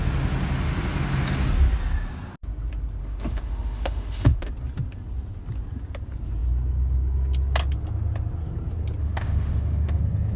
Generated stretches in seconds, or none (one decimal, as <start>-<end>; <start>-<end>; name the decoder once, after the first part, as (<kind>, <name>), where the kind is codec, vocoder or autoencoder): 3.0-4.5 (autoencoder, DAC-VAE); 9.0-10.0